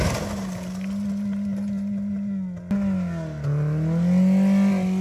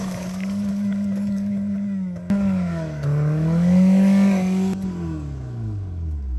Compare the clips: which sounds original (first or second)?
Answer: first